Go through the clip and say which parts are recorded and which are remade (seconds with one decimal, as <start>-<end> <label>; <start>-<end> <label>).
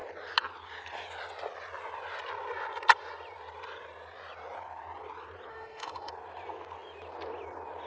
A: 0.0-5.5 recorded; 5.5-6.1 remade; 6.1-7.9 recorded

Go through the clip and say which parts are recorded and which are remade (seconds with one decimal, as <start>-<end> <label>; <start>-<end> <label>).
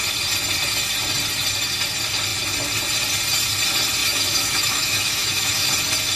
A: 0.0-4.0 recorded; 4.0-5.7 remade; 5.7-6.2 recorded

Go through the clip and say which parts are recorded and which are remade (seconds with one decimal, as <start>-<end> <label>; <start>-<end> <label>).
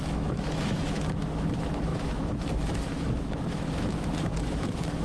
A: 0.0-5.0 remade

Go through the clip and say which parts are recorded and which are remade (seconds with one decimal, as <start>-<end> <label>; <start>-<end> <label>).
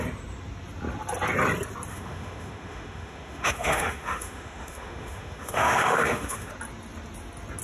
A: 0.0-1.9 recorded; 1.9-6.5 remade; 6.5-7.6 recorded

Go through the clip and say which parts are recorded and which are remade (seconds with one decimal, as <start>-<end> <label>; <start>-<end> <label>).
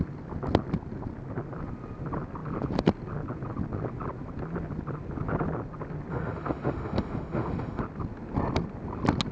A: 0.0-6.1 recorded; 6.1-7.8 remade; 7.8-9.3 recorded